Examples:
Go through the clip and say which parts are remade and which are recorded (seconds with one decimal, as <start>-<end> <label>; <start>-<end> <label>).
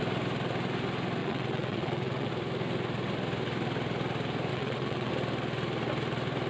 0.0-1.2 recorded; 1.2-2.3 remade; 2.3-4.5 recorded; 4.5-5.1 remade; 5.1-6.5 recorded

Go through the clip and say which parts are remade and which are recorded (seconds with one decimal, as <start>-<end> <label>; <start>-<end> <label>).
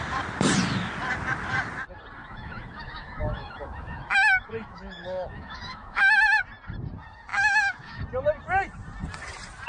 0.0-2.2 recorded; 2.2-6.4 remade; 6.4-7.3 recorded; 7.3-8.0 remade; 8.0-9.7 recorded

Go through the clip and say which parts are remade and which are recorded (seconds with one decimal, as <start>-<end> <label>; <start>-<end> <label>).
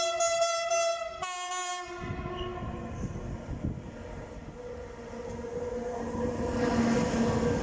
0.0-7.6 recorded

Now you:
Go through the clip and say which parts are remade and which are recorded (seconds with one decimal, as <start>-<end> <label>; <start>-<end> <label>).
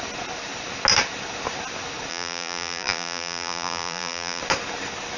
0.0-2.1 recorded; 2.1-4.4 remade; 4.4-5.2 recorded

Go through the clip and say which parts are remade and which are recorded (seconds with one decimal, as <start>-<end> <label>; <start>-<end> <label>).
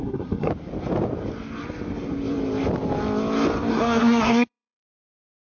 0.0-0.5 remade; 0.5-3.7 recorded; 3.7-5.4 remade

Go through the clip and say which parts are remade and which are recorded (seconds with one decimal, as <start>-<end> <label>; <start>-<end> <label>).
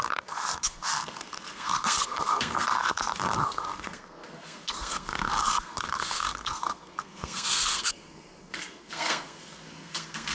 0.0-10.3 remade